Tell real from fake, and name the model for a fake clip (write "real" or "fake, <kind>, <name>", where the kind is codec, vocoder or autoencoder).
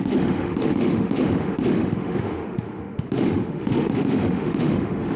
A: fake, autoencoder, DAC-VAE